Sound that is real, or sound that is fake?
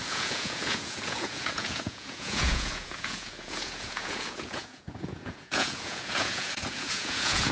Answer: fake